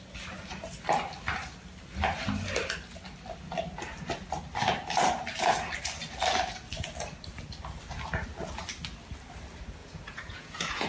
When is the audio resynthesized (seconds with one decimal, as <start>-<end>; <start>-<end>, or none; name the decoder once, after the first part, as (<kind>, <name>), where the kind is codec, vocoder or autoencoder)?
9.8-10.9 (vocoder, Vocos)